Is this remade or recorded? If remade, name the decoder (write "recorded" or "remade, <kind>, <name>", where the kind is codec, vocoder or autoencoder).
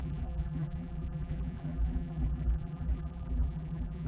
remade, vocoder, BigVGAN v2